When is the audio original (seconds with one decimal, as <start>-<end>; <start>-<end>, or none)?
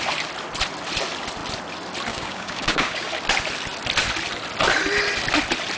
0.0-2.1; 3.1-5.8